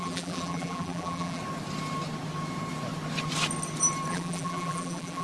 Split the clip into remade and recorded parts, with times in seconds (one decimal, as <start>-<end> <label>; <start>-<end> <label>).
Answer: 0.0-1.4 remade; 1.4-4.1 recorded; 4.1-5.2 remade